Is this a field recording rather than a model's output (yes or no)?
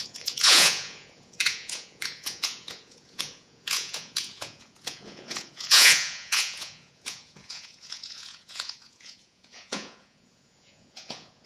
no